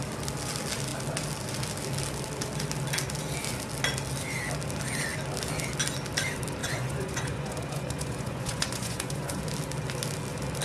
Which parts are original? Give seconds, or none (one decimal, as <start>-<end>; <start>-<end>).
0.0-6.6; 9.4-10.6